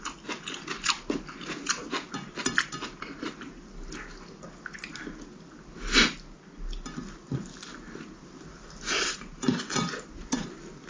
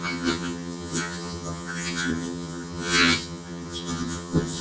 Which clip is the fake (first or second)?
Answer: second